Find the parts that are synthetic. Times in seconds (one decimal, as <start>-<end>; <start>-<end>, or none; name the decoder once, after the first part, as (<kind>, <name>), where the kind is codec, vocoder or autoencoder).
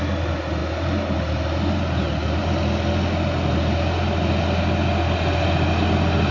none